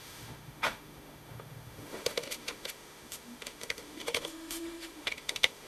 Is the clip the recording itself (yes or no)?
no